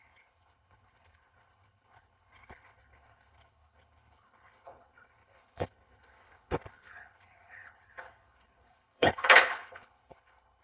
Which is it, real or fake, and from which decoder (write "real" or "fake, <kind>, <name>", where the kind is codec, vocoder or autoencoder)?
fake, codec, HILCodec